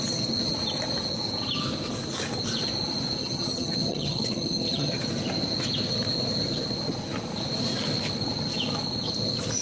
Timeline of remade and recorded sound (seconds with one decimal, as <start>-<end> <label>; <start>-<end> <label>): 0.0-3.2 recorded; 3.2-5.1 remade; 5.1-9.6 recorded